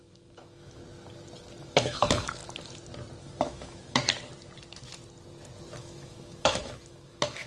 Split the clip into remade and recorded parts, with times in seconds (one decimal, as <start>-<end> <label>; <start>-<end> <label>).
0.0-0.8 remade; 0.8-1.6 recorded; 1.6-2.4 remade; 2.4-3.2 recorded; 3.2-4.0 remade; 4.0-5.8 recorded; 5.8-7.5 remade